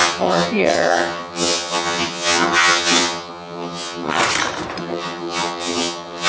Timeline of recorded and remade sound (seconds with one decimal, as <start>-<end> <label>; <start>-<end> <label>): 0.0-4.2 remade; 4.2-4.8 recorded; 4.8-6.3 remade